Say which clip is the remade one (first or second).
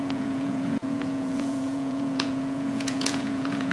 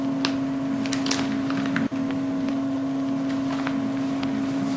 first